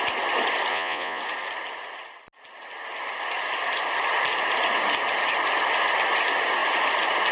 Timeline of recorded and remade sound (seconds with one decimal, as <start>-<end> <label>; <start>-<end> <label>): 0.0-0.7 recorded; 0.7-1.2 remade; 1.2-7.3 recorded